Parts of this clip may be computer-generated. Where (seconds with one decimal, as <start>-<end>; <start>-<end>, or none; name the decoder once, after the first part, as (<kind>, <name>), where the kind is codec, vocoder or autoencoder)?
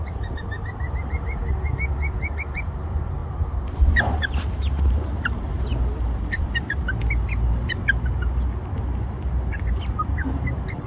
0.0-1.4 (vocoder, BigVGAN v2); 2.2-5.7; 9.7-10.9